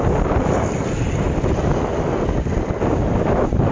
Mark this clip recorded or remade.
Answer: recorded